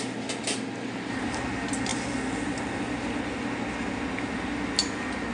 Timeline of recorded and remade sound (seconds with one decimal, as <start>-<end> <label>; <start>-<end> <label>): 0.0-5.3 recorded